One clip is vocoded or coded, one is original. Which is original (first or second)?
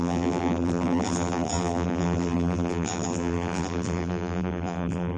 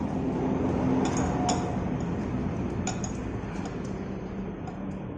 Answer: second